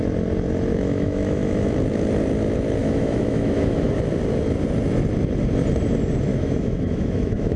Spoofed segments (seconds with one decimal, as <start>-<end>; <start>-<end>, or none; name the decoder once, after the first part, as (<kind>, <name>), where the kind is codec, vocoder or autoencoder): 0.7-1.7 (autoencoder, DAC-VAE); 2.8-3.9; 6.3-7.6